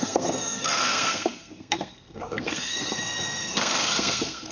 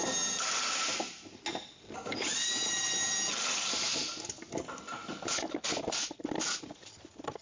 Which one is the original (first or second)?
second